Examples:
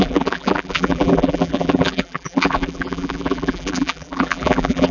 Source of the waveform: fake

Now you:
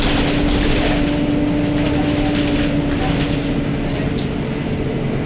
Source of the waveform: real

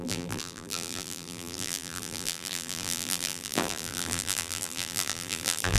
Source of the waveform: fake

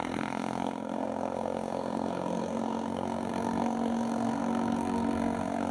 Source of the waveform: fake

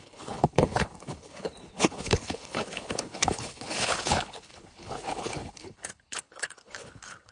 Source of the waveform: fake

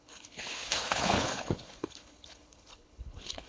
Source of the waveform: fake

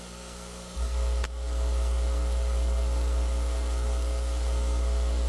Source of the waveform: fake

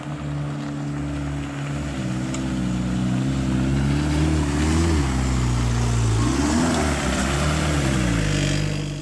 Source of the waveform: real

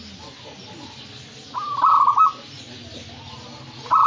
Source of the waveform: real